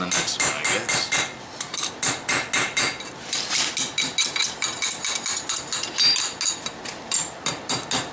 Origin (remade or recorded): recorded